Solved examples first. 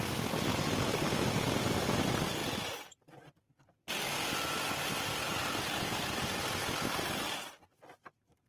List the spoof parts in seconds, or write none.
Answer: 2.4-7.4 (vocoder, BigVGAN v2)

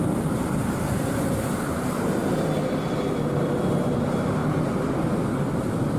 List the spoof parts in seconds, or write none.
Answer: none

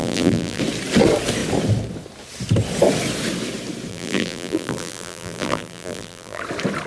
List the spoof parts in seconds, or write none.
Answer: 0.0-0.6 (vocoder, BigVGAN v2); 3.9-6.4

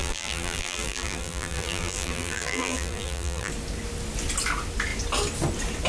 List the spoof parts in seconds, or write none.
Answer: 0.0-3.5 (vocoder, BigVGAN v2)

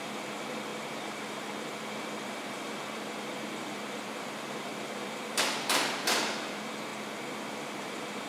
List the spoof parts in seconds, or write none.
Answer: 0.0-6.9 (vocoder, BigVGAN v2); 7.6-8.3

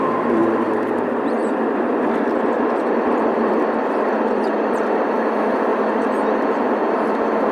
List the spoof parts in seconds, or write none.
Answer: 0.0-0.4 (vocoder, BigVGAN v2); 1.0-5.7; 6.5-7.5

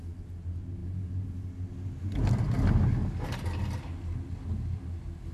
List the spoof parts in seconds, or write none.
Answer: none